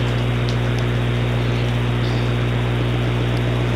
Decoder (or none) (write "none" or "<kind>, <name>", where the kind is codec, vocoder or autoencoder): none